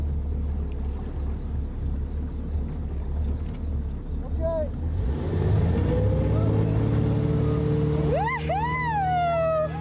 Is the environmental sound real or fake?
real